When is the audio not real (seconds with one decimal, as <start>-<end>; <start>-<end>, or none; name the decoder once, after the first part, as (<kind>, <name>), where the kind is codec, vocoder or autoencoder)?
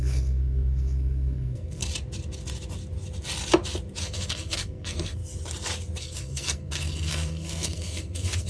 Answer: 0.0-1.8 (codec, SNAC); 4.0-5.2; 6.0-8.5